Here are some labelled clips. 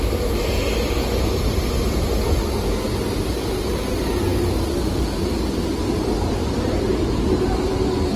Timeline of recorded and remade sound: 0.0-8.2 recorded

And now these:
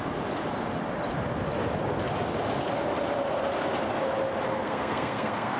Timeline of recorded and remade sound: 0.0-4.5 recorded; 4.5-5.6 remade